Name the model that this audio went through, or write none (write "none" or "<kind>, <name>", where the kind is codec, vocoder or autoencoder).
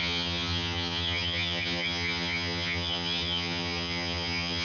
vocoder, HiFi-GAN